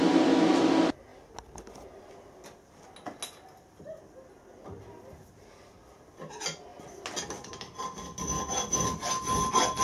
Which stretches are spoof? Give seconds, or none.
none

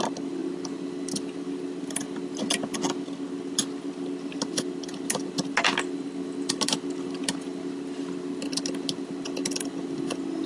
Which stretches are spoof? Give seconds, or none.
none

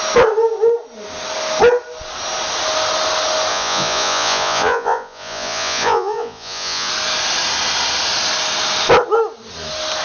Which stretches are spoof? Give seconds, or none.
3.5-6.9 (vocoder, Vocos)

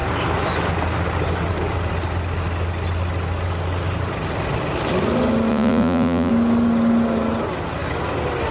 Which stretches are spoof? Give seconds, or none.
5.5-6.3 (vocoder, Vocos)